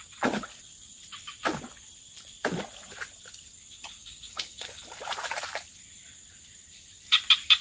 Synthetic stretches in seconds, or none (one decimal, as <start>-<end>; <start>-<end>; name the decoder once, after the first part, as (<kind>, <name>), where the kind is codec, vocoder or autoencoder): 4.0-4.8 (codec, DAC)